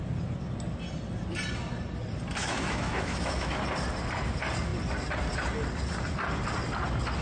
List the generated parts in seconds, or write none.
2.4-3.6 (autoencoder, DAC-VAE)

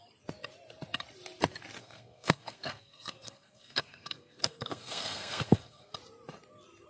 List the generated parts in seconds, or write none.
1.8-5.9 (codec, SNAC)

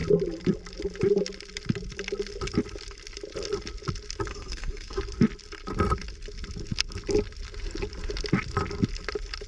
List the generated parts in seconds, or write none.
4.3-5.0 (codec, SNAC)

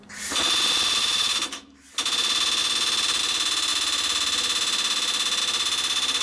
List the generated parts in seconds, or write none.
1.0-1.9 (autoencoder, DAC-VAE)

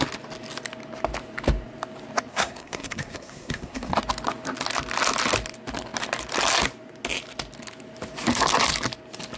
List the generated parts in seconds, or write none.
2.3-3.9 (codec, SNAC)